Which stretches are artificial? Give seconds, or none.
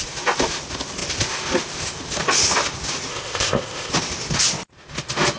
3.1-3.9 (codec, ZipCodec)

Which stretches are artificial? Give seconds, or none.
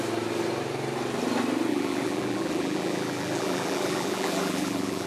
1.7-5.1 (vocoder, BigVGAN v2)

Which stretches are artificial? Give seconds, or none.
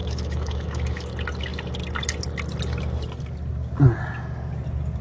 0.0-1.1 (autoencoder, DAC-VAE)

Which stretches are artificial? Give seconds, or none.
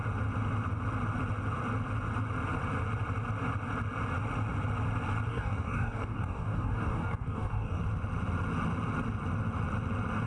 5.3-7.8 (codec, DAC)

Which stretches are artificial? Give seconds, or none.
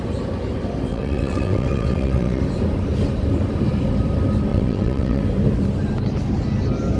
0.9-2.4 (vocoder, WaveNeXt); 4.5-5.2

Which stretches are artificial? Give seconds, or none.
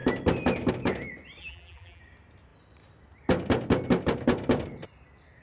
1.4-2.0 (vocoder, BigVGAN v2)